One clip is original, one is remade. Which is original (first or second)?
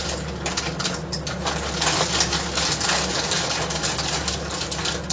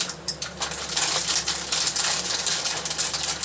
first